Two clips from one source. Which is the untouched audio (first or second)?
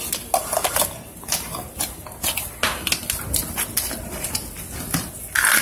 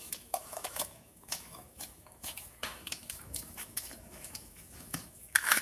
first